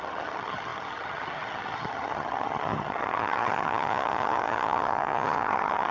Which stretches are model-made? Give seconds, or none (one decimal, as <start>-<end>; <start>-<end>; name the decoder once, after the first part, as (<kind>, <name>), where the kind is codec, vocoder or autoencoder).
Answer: 0.0-5.9 (vocoder, HiFi-GAN)